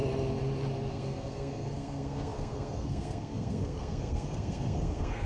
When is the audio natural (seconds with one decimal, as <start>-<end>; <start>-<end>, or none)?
0.0-0.9